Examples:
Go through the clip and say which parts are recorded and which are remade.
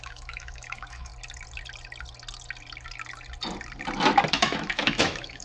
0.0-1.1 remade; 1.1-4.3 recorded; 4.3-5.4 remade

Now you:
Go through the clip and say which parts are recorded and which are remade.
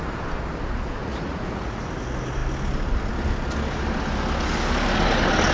0.0-1.0 recorded; 1.0-1.8 remade; 1.8-5.5 recorded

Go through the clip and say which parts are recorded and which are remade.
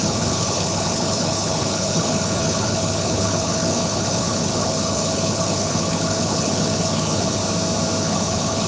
0.0-7.4 remade; 7.4-8.0 recorded; 8.0-8.7 remade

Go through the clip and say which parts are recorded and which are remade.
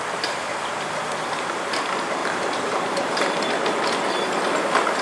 0.0-5.0 recorded